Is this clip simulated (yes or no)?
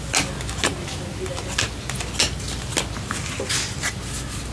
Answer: no